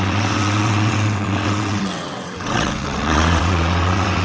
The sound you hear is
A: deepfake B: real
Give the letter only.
A